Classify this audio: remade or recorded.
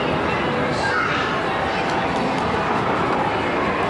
recorded